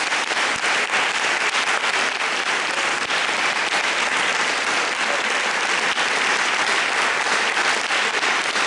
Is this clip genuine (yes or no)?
yes